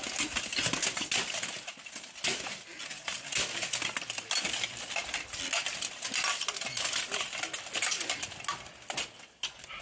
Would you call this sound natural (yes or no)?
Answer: yes